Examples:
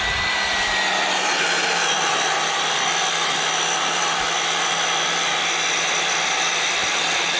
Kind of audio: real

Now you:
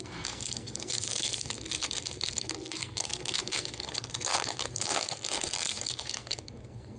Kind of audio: fake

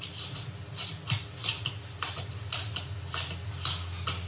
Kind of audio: real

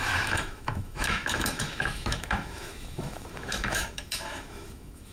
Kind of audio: fake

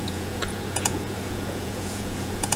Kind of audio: fake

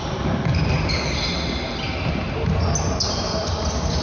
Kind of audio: real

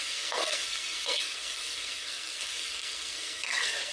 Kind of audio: fake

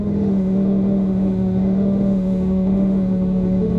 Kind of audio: fake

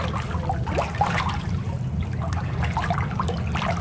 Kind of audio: real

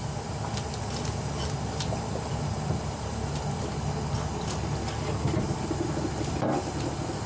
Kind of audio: real